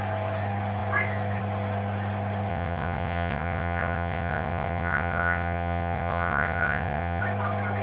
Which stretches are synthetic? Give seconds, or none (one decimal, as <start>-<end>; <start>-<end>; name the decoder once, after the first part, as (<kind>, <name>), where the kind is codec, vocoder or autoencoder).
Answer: 2.5-7.2 (vocoder, WaveNeXt)